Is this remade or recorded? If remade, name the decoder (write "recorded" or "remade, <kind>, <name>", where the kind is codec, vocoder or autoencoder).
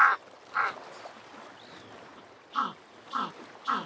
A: recorded